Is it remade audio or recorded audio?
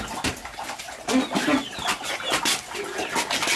recorded